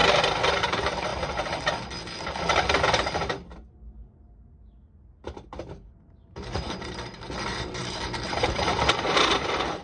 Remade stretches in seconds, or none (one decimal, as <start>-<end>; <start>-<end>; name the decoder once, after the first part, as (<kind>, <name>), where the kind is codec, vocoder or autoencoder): 0.6-1.1 (vocoder, BigVGAN v2); 5.9-9.8